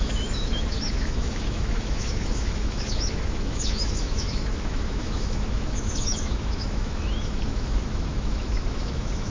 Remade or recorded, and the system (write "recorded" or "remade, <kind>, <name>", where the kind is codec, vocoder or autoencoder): remade, autoencoder, DAC-VAE